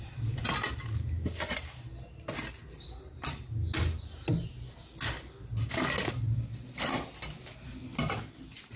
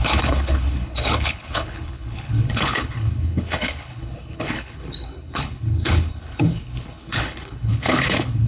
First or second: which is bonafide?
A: first